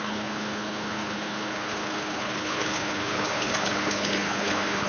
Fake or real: fake